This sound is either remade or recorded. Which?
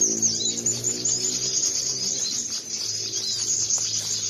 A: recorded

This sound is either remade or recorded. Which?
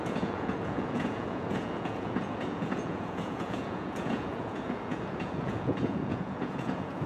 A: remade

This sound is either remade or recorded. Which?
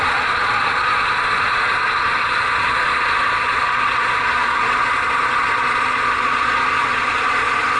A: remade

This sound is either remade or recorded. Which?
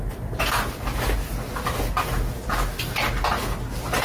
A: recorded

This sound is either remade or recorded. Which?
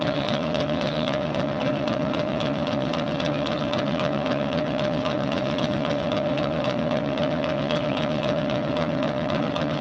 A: remade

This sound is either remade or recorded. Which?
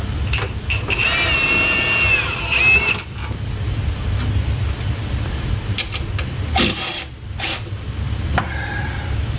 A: recorded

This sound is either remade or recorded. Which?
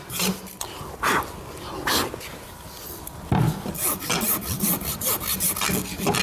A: recorded